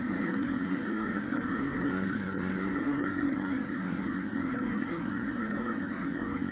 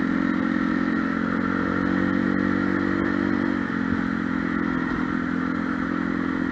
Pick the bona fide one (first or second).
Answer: second